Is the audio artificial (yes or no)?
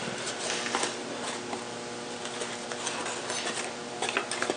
no